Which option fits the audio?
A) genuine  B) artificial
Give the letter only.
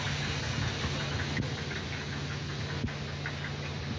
A